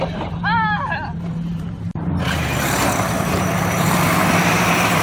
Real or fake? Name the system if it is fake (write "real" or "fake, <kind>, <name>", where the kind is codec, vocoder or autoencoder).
fake, vocoder, BigVGAN v2